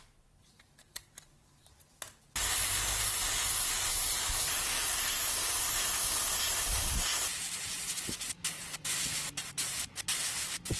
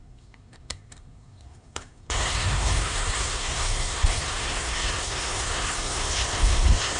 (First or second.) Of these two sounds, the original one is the first